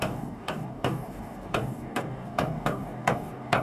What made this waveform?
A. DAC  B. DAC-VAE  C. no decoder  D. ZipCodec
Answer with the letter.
A